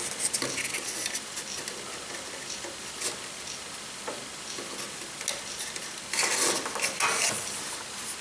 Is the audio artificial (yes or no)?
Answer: no